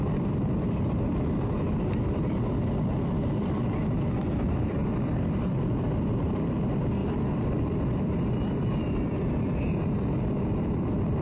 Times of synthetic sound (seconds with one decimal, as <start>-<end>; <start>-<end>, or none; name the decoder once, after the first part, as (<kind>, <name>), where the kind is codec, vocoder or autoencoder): 0.0-4.8 (vocoder, BigVGAN v2); 5.4-11.2